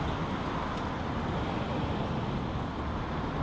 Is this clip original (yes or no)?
yes